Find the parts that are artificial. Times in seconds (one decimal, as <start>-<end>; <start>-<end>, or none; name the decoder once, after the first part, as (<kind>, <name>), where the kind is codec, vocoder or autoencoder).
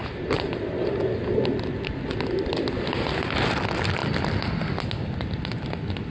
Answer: none